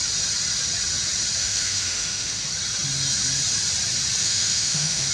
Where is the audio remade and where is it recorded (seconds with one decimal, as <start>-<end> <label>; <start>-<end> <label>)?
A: 0.0-1.4 recorded; 1.4-2.4 remade; 2.4-4.2 recorded; 4.2-5.1 remade